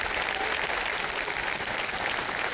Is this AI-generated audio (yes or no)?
no